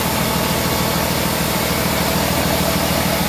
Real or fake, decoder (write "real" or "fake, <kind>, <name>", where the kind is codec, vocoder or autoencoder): real